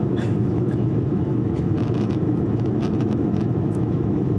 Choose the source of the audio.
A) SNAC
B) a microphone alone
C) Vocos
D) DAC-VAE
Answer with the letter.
D